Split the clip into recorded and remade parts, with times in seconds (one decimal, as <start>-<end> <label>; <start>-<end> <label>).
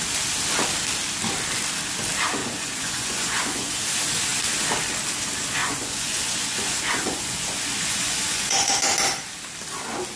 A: 0.0-2.4 recorded; 2.4-3.8 remade; 3.8-5.6 recorded; 5.6-8.7 remade; 8.7-10.2 recorded